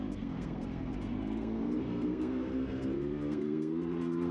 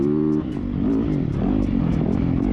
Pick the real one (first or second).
second